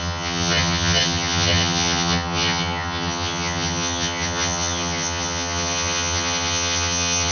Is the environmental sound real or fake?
fake